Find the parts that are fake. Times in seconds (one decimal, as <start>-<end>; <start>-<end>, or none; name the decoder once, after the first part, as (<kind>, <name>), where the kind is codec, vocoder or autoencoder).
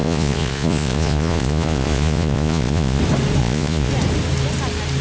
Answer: 0.0-3.0 (vocoder, Vocos); 3.4-3.9